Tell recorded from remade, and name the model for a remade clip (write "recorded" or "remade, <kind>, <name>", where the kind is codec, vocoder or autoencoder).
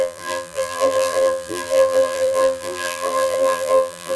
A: remade, vocoder, BigVGAN v2